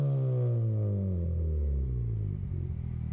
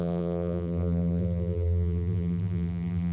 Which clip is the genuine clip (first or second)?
first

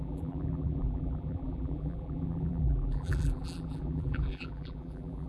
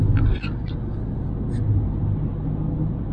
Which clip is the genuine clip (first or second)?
second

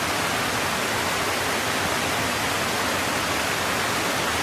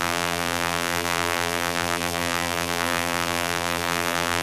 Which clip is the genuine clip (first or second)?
first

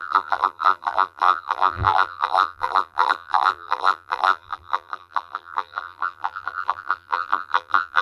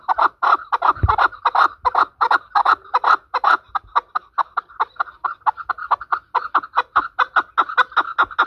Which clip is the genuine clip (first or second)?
second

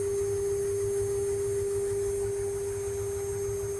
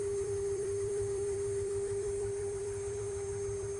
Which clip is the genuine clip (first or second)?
first